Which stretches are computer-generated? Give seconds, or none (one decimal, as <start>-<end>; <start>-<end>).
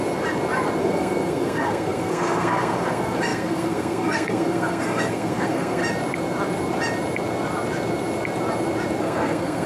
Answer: 0.8-5.8; 9.0-9.7